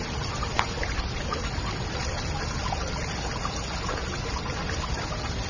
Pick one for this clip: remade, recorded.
recorded